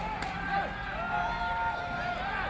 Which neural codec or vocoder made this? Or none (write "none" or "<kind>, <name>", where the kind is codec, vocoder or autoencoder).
none